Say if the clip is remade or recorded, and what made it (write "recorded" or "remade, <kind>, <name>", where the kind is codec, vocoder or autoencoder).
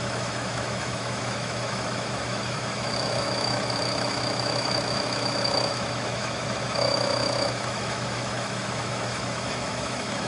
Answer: remade, autoencoder, DAC-VAE